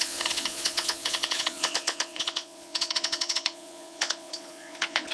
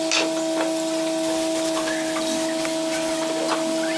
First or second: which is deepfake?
first